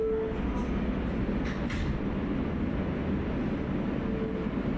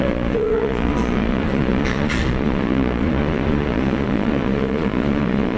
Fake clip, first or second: second